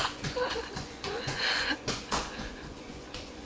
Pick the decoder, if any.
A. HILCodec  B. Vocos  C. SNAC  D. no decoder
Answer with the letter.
B